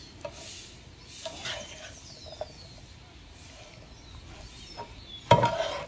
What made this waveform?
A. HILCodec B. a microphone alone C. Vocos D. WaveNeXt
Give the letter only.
B